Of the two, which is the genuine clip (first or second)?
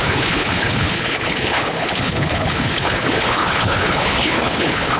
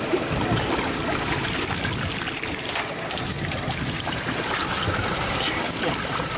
second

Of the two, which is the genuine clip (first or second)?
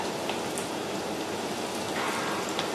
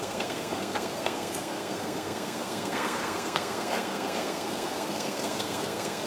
first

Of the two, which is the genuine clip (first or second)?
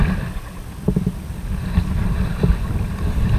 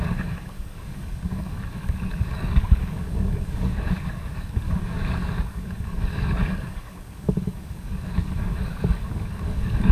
first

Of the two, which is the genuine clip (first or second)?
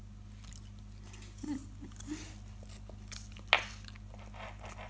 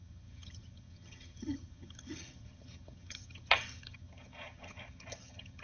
first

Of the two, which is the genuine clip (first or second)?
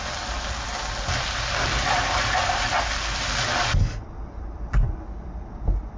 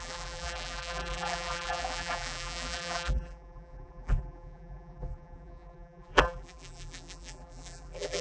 first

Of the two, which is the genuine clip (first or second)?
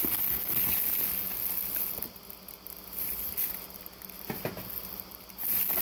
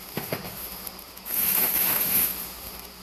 first